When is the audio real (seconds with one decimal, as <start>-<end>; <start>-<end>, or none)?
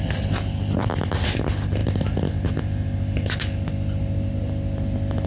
0.0-5.3